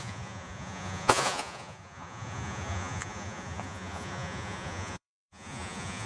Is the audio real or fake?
fake